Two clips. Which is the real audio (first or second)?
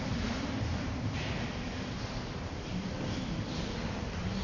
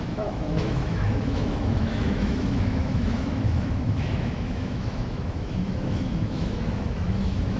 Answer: first